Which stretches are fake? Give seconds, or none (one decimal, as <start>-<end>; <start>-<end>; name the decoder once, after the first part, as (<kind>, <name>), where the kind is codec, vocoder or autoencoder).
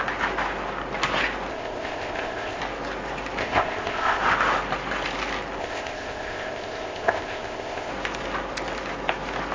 1.5-2.6 (codec, ZipCodec); 3.4-4.2; 5.6-7.9